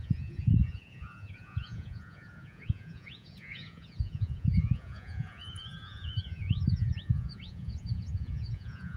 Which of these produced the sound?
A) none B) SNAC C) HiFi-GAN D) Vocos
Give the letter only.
D